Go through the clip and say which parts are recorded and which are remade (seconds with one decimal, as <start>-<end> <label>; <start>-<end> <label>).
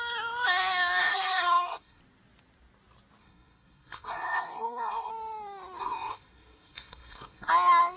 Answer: 0.0-1.0 recorded; 1.0-2.0 remade; 2.0-3.2 recorded; 3.2-5.1 remade; 5.1-5.8 recorded; 5.8-7.5 remade; 7.5-8.0 recorded